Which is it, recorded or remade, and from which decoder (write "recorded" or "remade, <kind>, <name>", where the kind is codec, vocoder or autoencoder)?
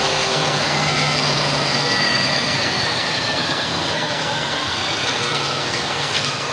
remade, codec, SNAC